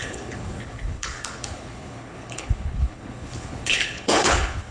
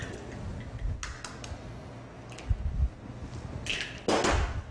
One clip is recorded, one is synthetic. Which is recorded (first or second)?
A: second